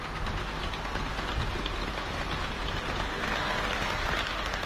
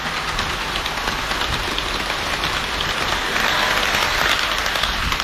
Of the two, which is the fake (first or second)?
second